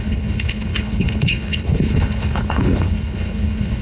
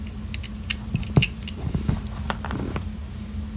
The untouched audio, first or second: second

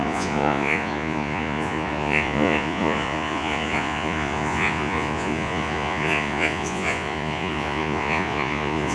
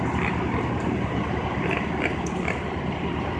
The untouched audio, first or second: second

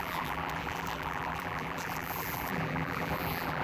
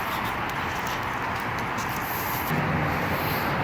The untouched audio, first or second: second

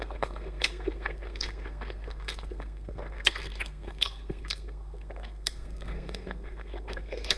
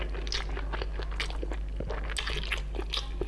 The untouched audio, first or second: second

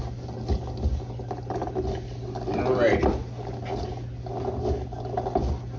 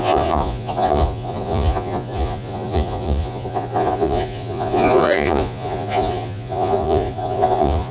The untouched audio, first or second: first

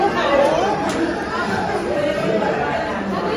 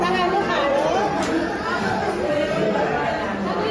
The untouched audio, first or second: second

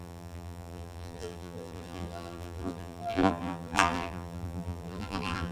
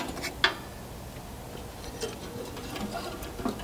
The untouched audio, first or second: second